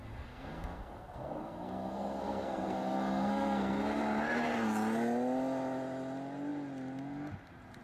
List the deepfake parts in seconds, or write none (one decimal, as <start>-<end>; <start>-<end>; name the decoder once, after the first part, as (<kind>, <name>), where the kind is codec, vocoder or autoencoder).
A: 0.0-4.0 (codec, SNAC)